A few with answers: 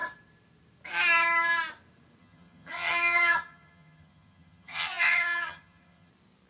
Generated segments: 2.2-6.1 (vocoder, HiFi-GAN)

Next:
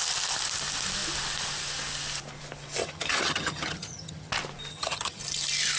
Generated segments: 2.8-4.3 (vocoder, HiFi-GAN); 4.7-5.2

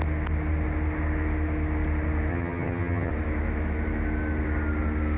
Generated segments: 2.3-3.1 (vocoder, HiFi-GAN)

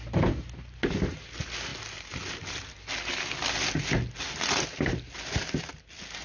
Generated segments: none

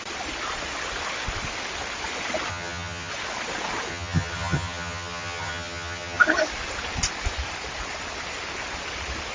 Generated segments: 2.5-3.1 (vocoder, HiFi-GAN); 3.9-6.2

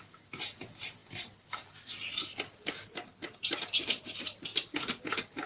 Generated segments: none

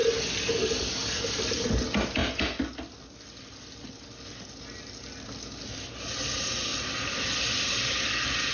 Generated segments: none